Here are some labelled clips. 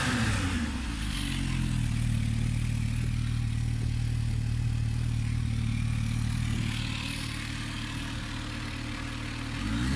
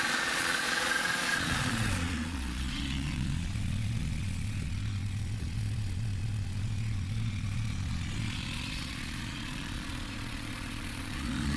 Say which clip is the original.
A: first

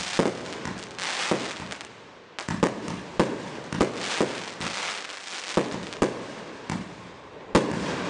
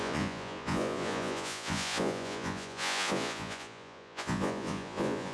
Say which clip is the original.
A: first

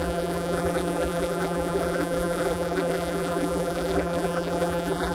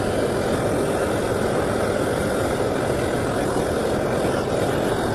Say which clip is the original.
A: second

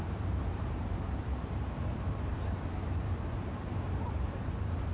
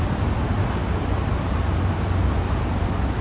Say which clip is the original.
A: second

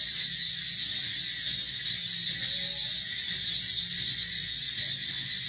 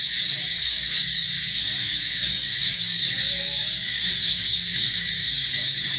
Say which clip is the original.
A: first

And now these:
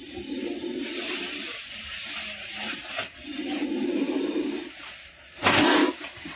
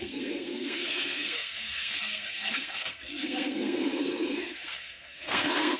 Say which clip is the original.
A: first